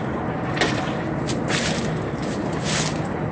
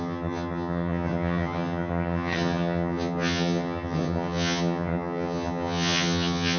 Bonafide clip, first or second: first